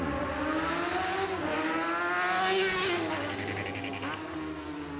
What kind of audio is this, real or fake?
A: real